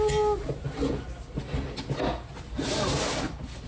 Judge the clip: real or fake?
real